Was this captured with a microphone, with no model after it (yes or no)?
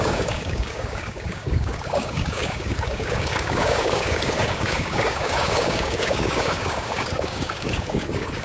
no